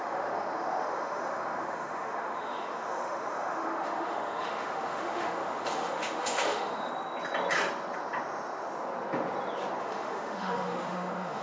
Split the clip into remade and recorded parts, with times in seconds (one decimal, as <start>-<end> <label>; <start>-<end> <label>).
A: 0.0-6.9 remade; 6.9-9.8 recorded; 9.8-11.4 remade